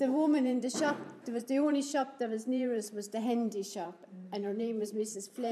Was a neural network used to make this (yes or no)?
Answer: yes